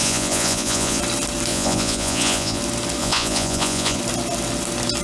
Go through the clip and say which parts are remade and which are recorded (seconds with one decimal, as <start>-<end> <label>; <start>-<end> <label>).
0.0-1.0 remade; 1.0-1.5 recorded; 1.5-2.6 remade; 2.6-3.0 recorded; 3.0-4.0 remade; 4.0-5.0 recorded